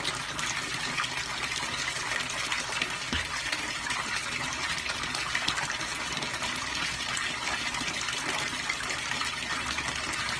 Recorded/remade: recorded